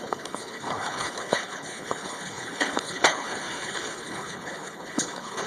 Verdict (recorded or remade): remade